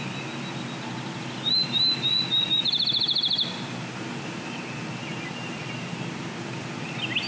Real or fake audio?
real